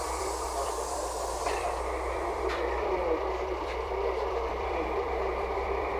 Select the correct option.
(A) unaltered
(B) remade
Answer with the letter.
B